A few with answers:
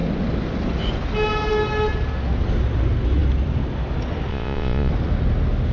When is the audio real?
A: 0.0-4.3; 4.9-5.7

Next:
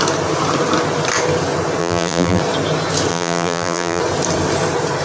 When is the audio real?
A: 0.0-1.8; 2.4-3.1; 4.0-5.0

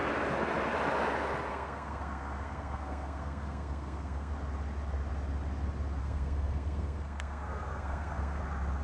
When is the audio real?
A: 0.0-1.5; 4.3-6.0; 8.4-8.8

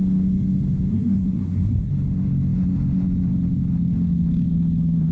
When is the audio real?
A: 0.0-0.9; 1.9-5.1

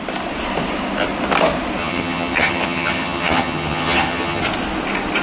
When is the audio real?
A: 0.0-1.8; 4.4-5.2

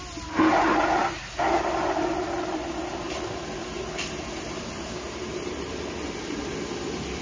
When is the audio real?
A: 0.0-7.2

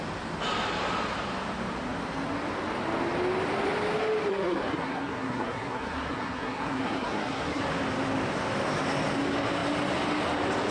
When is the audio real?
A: 0.0-4.3; 7.6-10.7

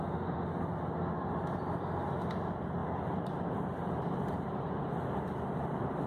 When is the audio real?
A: 0.0-2.8